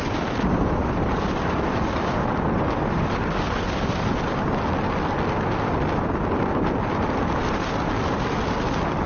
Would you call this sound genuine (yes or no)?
yes